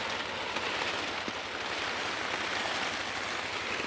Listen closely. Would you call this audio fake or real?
real